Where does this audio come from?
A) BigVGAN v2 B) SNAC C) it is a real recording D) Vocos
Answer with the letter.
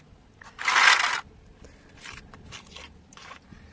C